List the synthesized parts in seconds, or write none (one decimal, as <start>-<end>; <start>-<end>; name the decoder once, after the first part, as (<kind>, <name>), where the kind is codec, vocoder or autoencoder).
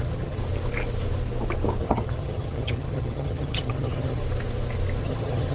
0.0-0.4 (vocoder, HiFi-GAN); 1.8-4.2; 5.0-5.5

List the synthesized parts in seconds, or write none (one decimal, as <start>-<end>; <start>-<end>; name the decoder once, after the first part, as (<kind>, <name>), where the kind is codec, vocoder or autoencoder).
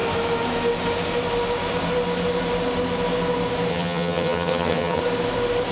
3.7-5.0 (vocoder, HiFi-GAN)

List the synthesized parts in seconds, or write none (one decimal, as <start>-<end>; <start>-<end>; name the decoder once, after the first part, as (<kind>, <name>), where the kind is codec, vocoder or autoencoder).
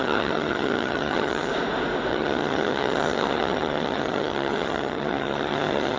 0.0-1.5 (vocoder, HiFi-GAN); 2.1-6.0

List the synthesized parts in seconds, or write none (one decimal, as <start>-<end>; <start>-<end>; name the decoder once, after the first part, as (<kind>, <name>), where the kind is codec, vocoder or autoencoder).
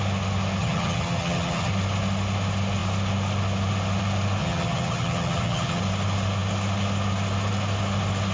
0.6-1.7 (vocoder, HiFi-GAN); 4.4-5.8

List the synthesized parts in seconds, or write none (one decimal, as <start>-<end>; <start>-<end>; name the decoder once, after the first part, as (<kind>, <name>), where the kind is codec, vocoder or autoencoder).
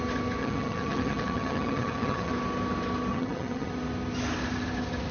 0.4-2.3 (vocoder, HiFi-GAN); 3.1-3.7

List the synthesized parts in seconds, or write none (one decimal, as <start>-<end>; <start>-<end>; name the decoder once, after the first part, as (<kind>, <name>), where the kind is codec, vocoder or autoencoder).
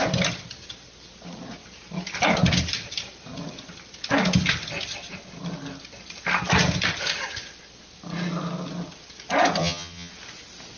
9.6-10.1 (vocoder, HiFi-GAN)